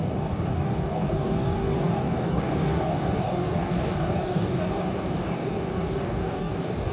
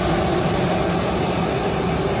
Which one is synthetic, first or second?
first